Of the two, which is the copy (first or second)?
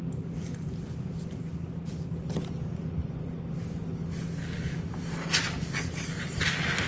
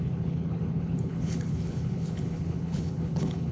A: second